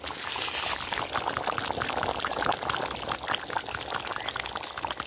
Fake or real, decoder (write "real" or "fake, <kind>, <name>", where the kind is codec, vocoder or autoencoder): real